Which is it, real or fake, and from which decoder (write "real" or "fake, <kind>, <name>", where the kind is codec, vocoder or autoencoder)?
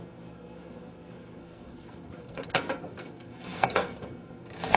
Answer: fake, codec, SNAC